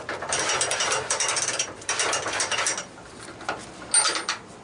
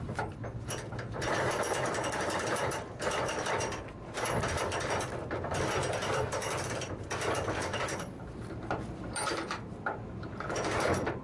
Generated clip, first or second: second